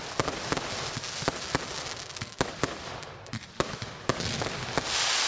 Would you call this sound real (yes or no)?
yes